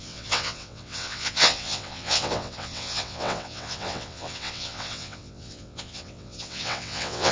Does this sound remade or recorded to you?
remade